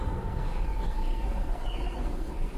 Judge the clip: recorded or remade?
remade